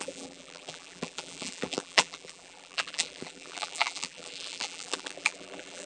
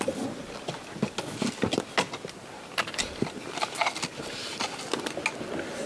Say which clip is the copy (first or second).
first